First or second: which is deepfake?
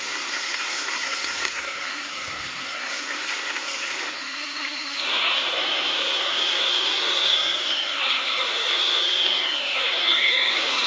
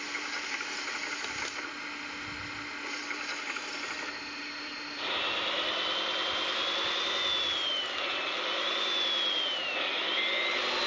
first